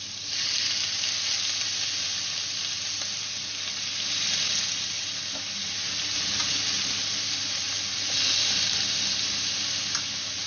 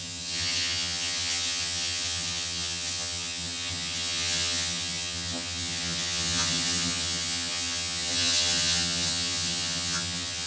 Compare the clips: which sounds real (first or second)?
first